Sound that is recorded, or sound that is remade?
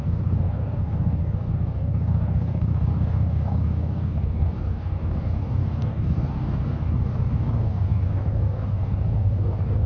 remade